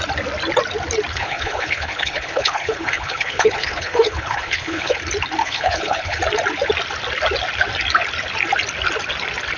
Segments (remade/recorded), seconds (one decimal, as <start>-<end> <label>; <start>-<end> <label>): 0.0-1.1 recorded; 1.1-5.0 remade; 5.0-5.4 recorded; 5.4-6.2 remade; 6.2-9.6 recorded